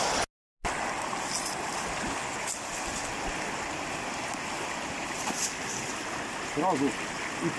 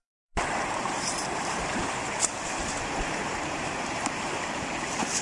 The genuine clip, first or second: first